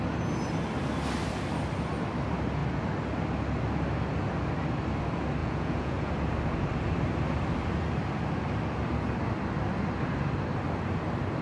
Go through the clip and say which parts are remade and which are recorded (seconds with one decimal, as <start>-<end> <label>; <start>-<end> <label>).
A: 0.0-5.4 recorded; 5.4-6.1 remade; 6.1-11.4 recorded